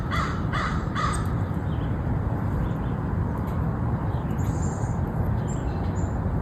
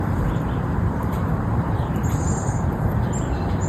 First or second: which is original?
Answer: first